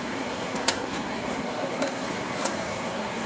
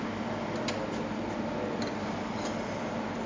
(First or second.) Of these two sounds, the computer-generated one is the first